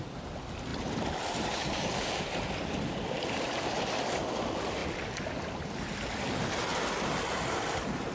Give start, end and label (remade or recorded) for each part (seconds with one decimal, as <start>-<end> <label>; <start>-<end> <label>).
0.0-0.7 recorded; 0.7-4.1 remade; 4.1-4.8 recorded; 4.8-5.8 remade; 5.8-8.1 recorded